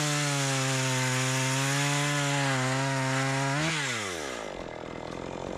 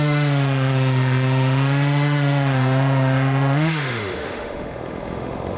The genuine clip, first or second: first